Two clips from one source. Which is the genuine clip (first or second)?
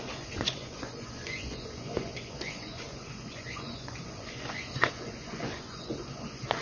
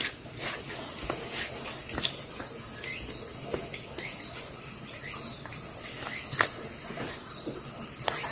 second